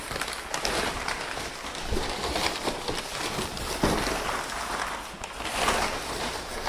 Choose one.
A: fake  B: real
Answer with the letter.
B